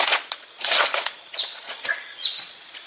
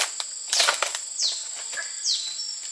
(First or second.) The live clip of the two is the second